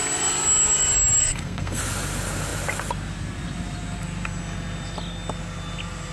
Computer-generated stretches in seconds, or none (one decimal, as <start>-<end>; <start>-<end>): 1.2-1.8